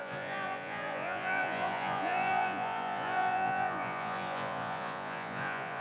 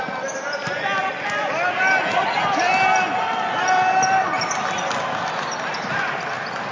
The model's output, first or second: first